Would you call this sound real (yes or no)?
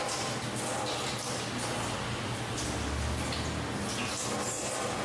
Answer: yes